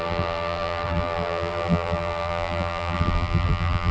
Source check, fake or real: fake